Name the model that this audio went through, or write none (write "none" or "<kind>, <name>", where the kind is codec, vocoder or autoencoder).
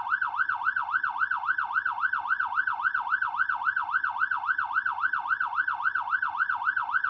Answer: none